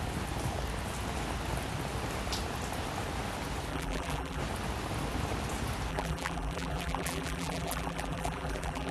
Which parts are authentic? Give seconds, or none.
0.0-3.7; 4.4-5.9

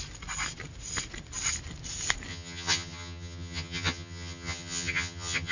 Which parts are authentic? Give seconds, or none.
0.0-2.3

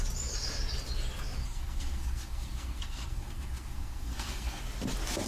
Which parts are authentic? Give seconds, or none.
0.0-1.4; 4.6-5.3